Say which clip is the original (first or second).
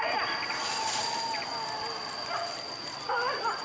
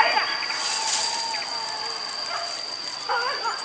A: second